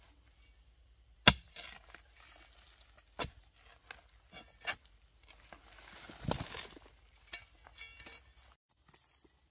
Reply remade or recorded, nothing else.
recorded